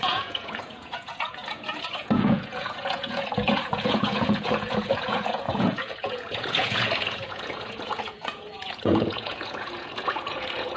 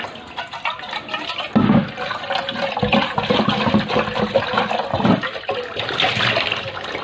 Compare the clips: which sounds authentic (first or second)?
second